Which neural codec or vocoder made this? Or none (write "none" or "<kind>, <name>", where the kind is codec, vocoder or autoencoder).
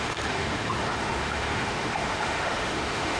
autoencoder, DAC-VAE